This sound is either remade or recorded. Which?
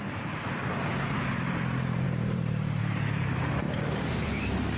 remade